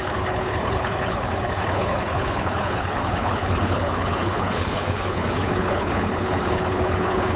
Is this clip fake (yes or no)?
yes